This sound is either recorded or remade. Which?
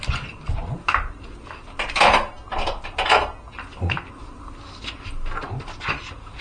recorded